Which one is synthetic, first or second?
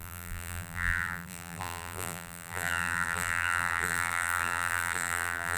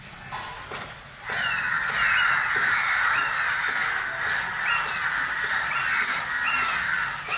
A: first